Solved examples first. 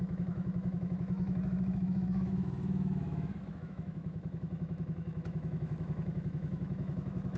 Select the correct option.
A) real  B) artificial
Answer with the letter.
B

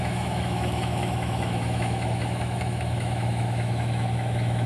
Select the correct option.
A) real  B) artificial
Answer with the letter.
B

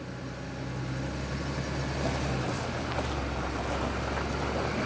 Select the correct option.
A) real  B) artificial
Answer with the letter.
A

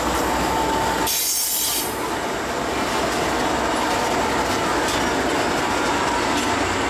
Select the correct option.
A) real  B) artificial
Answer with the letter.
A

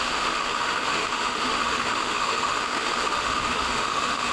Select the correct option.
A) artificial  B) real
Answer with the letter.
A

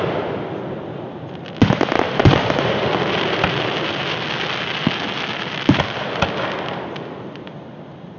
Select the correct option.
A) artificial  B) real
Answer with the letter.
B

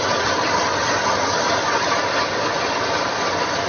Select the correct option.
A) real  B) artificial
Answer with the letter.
A